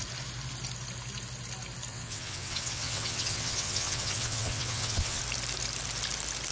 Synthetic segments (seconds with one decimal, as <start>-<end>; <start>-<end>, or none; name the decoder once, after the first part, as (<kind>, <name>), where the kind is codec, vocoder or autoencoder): 1.9-5.2 (vocoder, WaveNeXt)